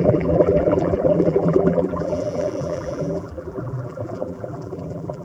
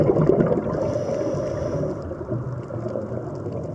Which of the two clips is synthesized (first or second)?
first